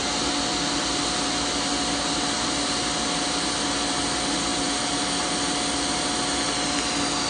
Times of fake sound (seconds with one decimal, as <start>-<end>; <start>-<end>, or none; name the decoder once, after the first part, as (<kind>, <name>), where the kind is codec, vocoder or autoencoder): none